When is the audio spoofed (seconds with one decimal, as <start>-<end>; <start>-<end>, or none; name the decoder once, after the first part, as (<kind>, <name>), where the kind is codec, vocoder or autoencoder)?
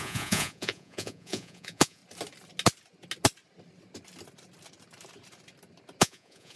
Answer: 0.0-2.0 (vocoder, Vocos); 6.0-6.6